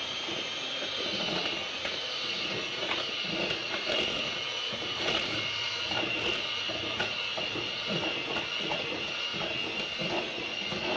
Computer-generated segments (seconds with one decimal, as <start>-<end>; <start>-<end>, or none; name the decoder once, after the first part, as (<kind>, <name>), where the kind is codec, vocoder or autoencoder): 0.0-9.3 (vocoder, Vocos); 10.1-11.0

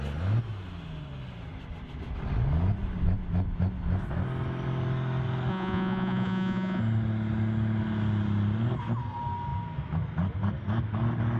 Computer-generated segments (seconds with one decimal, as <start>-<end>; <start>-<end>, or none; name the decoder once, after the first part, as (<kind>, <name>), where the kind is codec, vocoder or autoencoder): 5.5-6.8 (vocoder, Vocos)

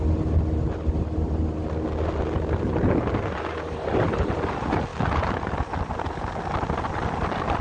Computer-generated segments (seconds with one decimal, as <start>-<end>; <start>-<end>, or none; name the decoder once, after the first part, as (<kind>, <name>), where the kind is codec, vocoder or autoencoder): none

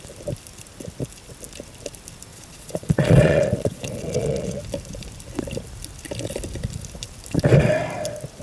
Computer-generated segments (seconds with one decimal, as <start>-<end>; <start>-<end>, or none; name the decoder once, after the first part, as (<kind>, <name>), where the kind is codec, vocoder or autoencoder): 2.3-4.6 (vocoder, Vocos)

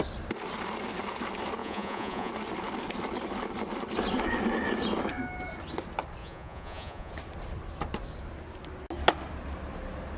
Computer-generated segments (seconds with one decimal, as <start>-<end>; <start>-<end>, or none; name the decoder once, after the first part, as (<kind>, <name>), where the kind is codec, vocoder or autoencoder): 1.6-2.3 (vocoder, Vocos); 6.2-7.1